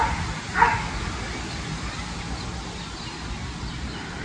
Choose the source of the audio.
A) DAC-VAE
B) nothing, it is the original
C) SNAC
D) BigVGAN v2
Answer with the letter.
B